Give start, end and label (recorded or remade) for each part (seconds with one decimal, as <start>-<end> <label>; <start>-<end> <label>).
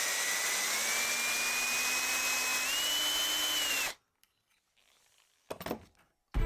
0.0-6.5 recorded